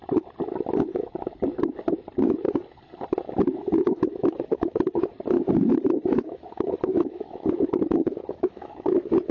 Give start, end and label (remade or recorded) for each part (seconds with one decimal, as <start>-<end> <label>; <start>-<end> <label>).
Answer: 0.0-3.6 recorded; 3.6-5.1 remade; 5.1-5.7 recorded; 5.7-9.3 remade